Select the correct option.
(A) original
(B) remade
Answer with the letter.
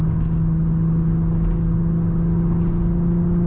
A